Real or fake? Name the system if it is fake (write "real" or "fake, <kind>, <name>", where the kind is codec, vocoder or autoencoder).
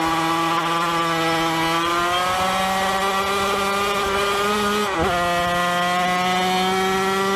real